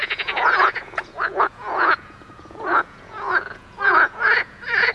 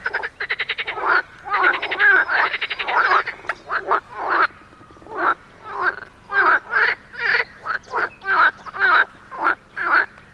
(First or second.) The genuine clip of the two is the second